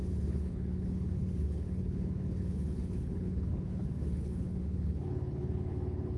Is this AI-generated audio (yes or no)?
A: yes